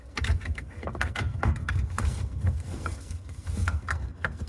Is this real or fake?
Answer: fake